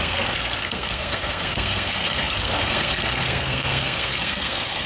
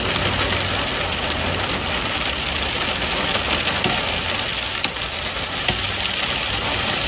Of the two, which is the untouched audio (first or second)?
second